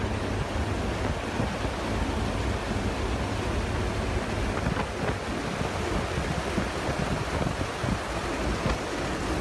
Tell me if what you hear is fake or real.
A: real